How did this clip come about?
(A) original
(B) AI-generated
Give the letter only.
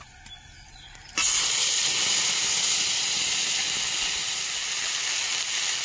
A